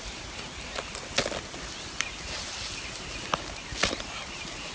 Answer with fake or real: real